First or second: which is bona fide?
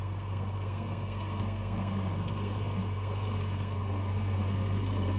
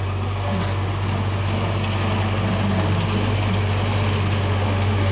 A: second